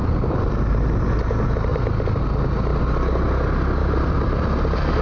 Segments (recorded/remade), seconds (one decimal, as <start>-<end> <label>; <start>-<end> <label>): 0.0-1.0 remade; 1.0-3.8 recorded; 3.8-5.0 remade